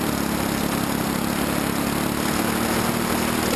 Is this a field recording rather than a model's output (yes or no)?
yes